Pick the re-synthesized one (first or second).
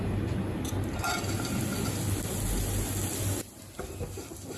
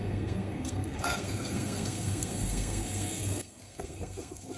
second